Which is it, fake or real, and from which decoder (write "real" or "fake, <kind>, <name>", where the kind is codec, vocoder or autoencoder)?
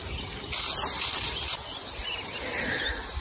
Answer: fake, vocoder, BigVGAN v2